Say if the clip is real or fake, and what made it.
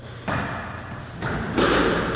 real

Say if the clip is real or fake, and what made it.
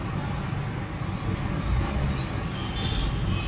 real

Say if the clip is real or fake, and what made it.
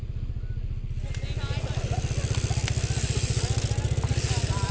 real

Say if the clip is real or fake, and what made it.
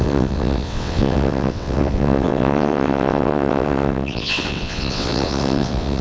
fake, vocoder, WaveNeXt